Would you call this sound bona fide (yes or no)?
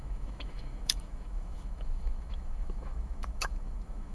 no